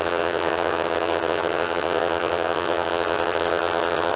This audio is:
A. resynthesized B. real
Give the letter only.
A